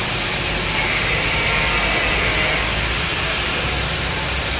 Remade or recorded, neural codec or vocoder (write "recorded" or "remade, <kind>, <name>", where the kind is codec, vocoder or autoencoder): recorded